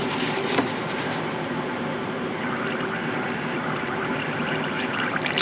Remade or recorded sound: remade